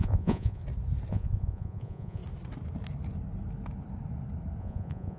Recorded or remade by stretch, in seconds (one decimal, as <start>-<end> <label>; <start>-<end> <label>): 0.0-0.6 remade; 0.6-1.1 recorded; 1.1-2.2 remade; 2.2-4.6 recorded; 4.6-5.2 remade

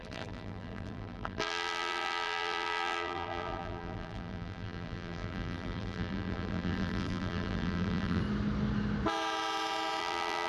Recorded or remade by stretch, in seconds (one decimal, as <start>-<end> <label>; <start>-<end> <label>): 0.0-8.2 remade; 8.2-10.0 recorded; 10.0-10.5 remade

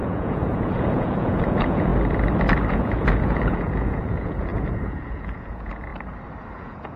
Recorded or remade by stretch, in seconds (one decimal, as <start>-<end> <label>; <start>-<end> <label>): 0.0-1.9 remade; 1.9-2.7 recorded; 2.7-5.9 remade; 5.9-6.6 recorded; 6.6-7.0 remade